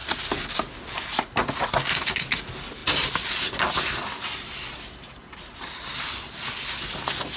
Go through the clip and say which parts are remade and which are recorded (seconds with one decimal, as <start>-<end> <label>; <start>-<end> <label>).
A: 0.0-0.6 remade; 0.6-2.8 recorded; 2.8-6.7 remade; 6.7-7.4 recorded